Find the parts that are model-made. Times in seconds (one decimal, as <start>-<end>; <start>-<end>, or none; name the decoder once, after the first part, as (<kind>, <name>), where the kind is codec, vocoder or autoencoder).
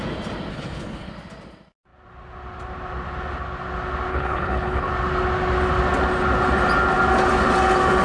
0.5-1.1 (codec, HILCodec); 4.1-4.9